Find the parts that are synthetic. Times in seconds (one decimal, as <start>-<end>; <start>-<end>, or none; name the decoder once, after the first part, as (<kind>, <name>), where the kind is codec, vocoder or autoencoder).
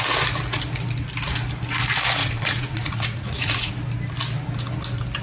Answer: 2.2-3.7 (vocoder, Vocos)